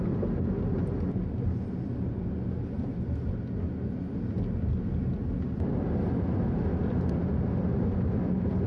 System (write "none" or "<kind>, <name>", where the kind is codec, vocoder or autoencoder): none